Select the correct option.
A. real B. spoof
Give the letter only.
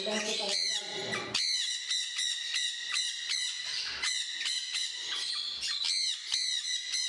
A